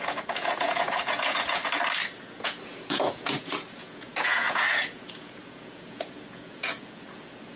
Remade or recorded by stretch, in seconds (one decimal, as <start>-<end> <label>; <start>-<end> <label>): 0.0-1.6 remade; 1.6-2.3 recorded; 2.3-7.6 remade